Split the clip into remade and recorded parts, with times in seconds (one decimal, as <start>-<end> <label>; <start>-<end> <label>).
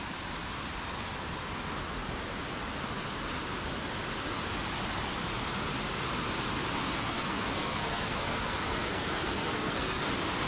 0.0-6.8 recorded; 6.8-10.1 remade; 10.1-10.5 recorded